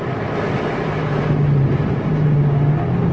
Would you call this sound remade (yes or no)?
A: no